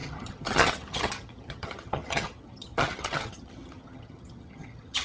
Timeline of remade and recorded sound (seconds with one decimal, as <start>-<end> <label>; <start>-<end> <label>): 0.0-5.0 remade